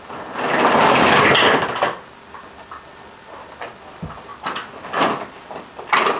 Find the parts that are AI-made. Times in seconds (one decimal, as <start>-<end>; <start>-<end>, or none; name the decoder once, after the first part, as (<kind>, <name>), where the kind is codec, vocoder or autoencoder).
none